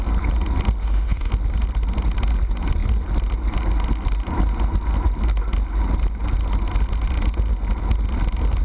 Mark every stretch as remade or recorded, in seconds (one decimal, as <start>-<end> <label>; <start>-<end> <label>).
0.0-0.8 recorded; 0.8-1.3 remade; 1.3-8.6 recorded